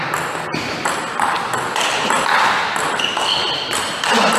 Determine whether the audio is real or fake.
real